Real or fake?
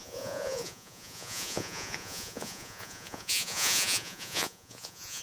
fake